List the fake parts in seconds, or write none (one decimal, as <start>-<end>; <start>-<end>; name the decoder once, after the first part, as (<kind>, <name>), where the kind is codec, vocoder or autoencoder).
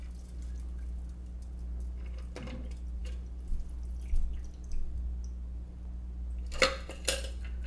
none